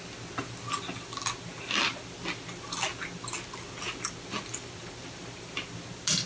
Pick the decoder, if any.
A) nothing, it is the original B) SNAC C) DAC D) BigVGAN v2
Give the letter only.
A